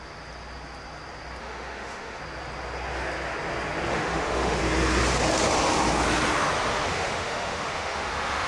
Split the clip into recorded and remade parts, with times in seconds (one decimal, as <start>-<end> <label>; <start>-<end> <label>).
0.0-1.4 recorded; 1.4-2.2 remade; 2.2-3.9 recorded; 3.9-4.6 remade; 4.6-6.7 recorded; 6.7-8.5 remade